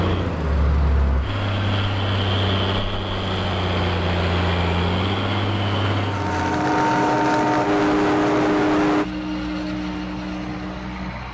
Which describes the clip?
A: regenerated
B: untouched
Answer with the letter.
B